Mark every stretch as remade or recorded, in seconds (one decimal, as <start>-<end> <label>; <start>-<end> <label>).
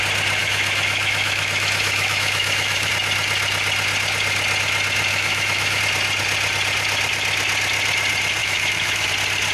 0.0-0.4 recorded; 0.4-2.9 remade; 2.9-5.1 recorded; 5.1-5.8 remade; 5.8-8.4 recorded; 8.4-9.1 remade; 9.1-9.5 recorded